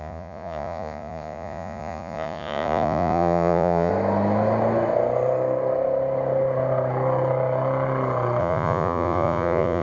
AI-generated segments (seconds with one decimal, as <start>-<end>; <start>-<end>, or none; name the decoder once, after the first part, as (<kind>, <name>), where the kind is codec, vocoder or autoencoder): 0.0-3.9 (vocoder, Vocos); 8.4-9.8